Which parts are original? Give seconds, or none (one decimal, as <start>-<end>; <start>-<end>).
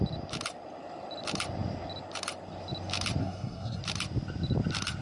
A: 0.0-3.2; 3.8-5.0